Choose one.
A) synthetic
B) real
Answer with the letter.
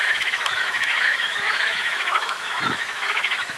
A